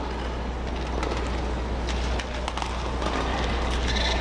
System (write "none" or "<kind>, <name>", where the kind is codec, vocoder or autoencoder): none